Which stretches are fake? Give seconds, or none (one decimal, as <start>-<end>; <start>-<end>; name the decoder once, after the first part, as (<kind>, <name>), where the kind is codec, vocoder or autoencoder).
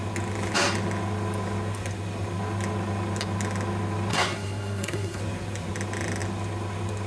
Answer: 4.1-5.2 (codec, SNAC)